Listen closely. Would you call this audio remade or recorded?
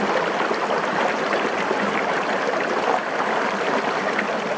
recorded